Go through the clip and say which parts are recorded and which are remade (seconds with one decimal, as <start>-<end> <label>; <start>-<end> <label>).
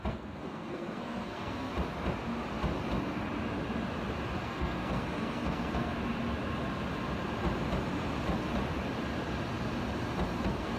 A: 0.0-1.7 remade; 1.7-4.4 recorded; 4.4-5.9 remade; 5.9-10.4 recorded; 10.4-10.8 remade